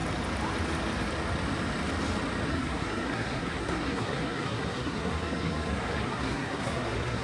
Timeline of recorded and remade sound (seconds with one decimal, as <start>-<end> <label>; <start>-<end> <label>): 0.0-2.5 recorded; 2.5-7.2 remade